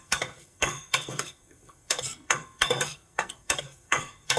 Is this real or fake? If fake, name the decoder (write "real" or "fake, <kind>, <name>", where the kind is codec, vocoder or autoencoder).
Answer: fake, codec, SNAC